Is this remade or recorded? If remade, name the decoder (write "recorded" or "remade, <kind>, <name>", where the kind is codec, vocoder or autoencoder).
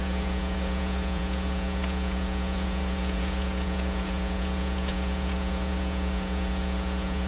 remade, vocoder, Vocos